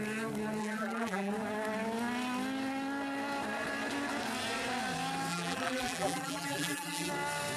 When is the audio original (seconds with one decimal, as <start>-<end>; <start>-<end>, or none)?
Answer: 0.0-0.6; 1.3-5.3; 7.1-7.6